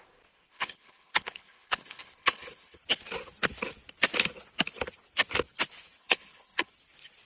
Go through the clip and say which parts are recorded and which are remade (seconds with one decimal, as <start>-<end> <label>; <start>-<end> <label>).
0.0-0.5 recorded; 0.5-2.8 remade; 2.8-6.0 recorded; 6.0-6.7 remade; 6.7-7.3 recorded